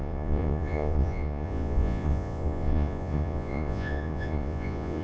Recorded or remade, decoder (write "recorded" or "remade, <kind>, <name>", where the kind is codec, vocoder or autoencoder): remade, vocoder, Vocos